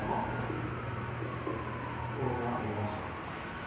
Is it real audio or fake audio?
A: real